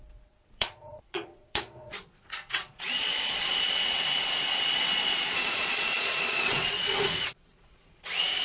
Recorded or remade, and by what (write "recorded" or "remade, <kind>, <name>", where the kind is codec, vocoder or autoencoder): remade, vocoder, Vocos